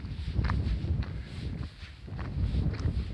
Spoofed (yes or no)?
no